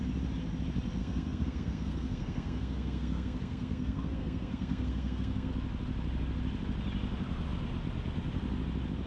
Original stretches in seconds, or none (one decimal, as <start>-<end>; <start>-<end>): 0.0-1.0; 5.5-9.1